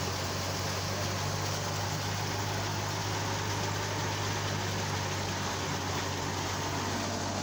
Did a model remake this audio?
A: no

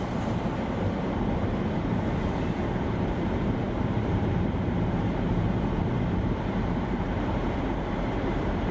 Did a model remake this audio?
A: yes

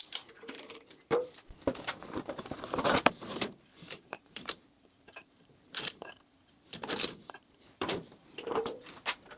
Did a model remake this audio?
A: yes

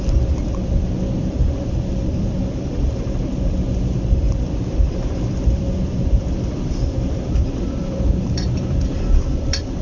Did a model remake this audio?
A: yes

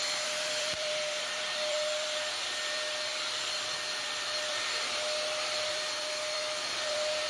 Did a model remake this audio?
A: yes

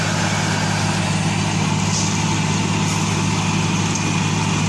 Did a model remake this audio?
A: no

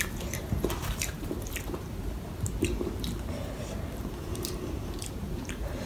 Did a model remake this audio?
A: yes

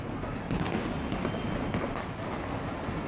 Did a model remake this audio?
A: no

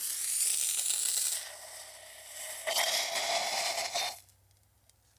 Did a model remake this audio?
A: no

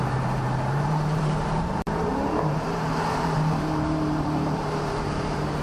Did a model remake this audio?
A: yes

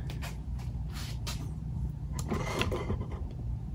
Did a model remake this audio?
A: yes